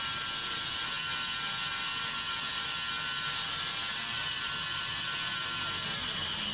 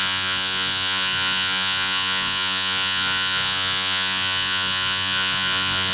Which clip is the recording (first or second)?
first